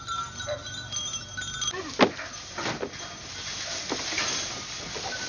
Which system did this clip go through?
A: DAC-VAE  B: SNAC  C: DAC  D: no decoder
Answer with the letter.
D